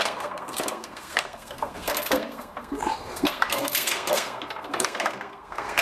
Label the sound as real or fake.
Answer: fake